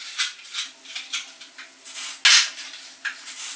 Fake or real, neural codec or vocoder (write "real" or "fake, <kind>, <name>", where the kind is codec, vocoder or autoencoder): real